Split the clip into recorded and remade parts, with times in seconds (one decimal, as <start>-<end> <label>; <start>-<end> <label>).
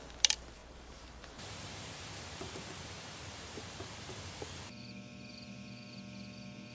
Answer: 0.0-0.6 recorded; 0.6-4.6 remade; 4.6-6.7 recorded